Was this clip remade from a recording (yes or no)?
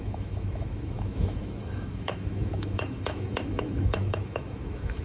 yes